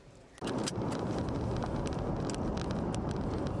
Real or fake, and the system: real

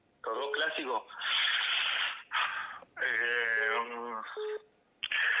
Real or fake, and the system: real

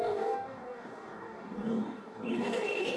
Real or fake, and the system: fake, codec, DAC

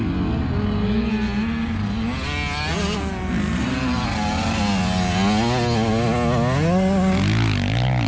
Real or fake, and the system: real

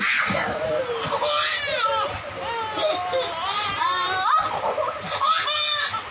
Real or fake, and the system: real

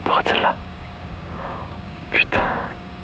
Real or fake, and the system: fake, codec, DAC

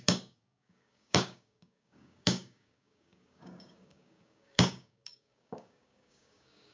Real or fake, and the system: fake, codec, DAC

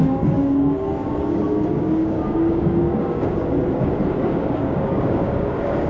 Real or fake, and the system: fake, codec, DAC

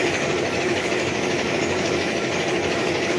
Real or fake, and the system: fake, codec, DAC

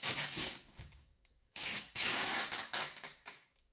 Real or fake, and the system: fake, codec, DAC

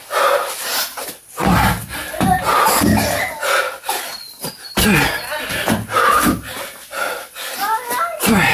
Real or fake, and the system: real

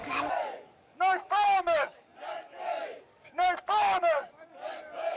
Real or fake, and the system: fake, codec, DAC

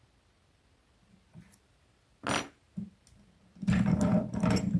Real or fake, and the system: real